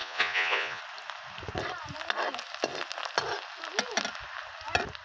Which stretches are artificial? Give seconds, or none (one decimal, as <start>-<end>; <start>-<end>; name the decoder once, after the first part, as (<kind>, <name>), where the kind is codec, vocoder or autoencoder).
0.0-0.8 (vocoder, Vocos)